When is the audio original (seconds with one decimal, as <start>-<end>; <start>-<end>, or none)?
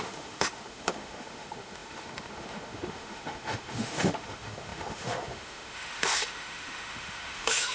none